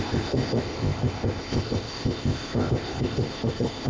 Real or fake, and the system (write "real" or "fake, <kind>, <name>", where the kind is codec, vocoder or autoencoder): fake, codec, ZipCodec